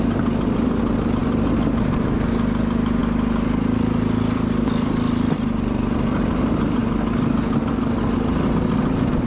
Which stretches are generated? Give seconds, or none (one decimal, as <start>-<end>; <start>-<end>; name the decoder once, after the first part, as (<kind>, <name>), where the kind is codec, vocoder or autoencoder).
1.2-1.8 (vocoder, BigVGAN v2); 3.0-6.3